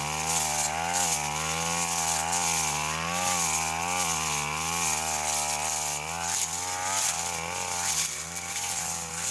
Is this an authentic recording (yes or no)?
yes